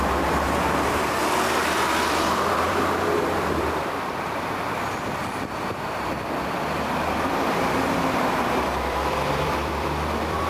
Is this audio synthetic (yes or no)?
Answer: yes